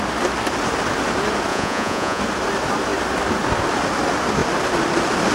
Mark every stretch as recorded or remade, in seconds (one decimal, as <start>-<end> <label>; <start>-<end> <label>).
0.0-1.5 recorded; 1.5-2.2 remade; 2.2-5.3 recorded